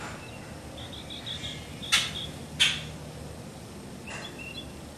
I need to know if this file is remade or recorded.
recorded